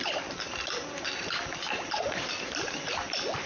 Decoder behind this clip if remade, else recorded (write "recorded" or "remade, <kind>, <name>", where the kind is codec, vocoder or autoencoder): recorded